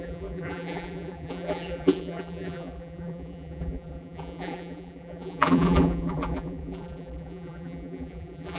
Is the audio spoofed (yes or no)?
yes